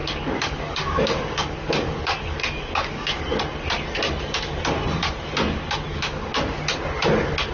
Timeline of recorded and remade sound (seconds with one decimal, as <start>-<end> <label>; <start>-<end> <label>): 0.0-3.4 remade; 3.4-5.9 recorded; 5.9-6.6 remade; 6.6-7.5 recorded